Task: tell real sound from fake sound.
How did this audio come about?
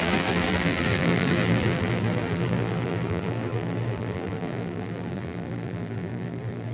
fake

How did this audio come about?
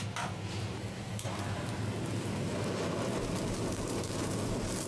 real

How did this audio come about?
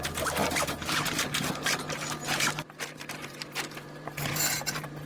fake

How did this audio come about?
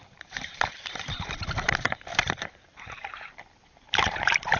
fake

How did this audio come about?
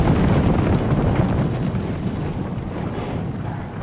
real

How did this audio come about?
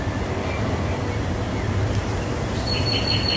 real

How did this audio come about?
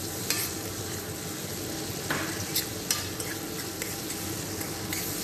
real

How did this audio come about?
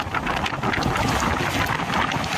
real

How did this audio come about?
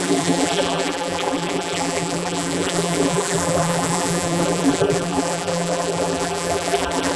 fake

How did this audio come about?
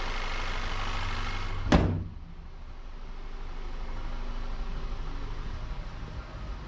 real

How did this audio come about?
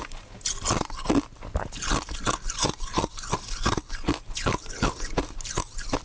real